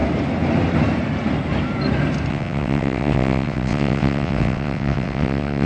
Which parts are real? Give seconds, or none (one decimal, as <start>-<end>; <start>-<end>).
0.0-2.3